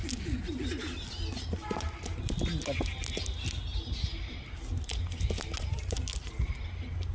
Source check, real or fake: real